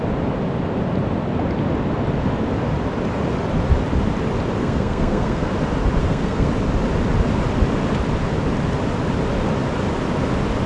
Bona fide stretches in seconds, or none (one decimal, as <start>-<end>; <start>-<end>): 0.0-4.6; 5.5-6.0; 6.5-10.7